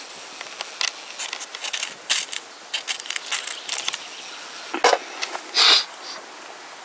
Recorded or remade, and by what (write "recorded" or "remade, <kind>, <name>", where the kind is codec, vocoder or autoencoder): recorded